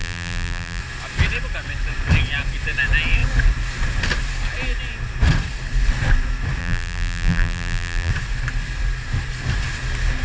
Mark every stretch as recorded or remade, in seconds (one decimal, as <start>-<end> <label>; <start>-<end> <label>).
0.0-0.8 remade; 0.8-6.6 recorded; 6.6-8.1 remade; 8.1-10.2 recorded